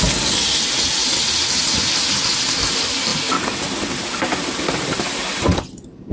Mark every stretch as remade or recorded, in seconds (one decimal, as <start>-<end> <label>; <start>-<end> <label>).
0.0-6.1 recorded